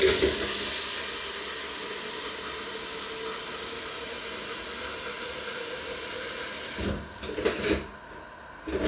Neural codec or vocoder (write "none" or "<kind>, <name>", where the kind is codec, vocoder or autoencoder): none